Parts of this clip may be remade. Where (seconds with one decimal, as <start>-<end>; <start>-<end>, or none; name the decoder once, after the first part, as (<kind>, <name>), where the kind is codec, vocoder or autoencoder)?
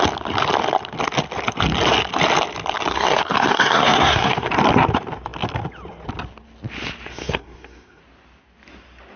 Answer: 2.9-4.5 (codec, SNAC); 7.1-8.0